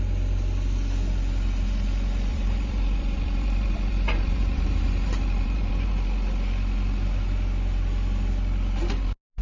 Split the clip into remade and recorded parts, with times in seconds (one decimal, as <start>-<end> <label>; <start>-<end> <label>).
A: 0.0-2.3 recorded; 2.3-5.7 remade; 5.7-9.4 recorded